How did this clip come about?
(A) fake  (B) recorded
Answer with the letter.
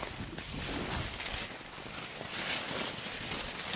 B